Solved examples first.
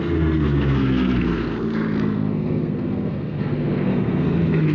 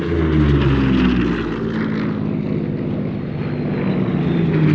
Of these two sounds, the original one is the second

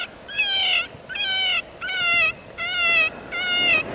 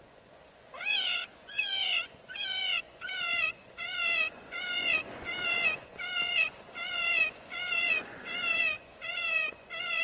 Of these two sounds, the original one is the first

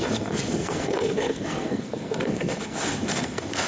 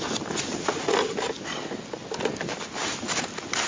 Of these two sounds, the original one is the second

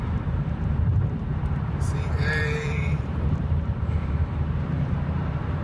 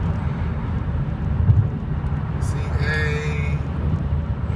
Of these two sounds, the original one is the second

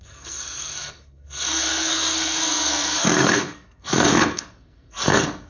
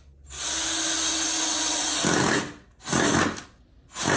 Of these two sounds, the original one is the second